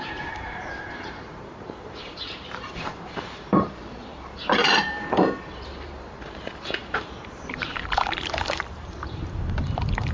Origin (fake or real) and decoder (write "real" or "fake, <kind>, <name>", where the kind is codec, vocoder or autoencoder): fake, vocoder, BigVGAN v2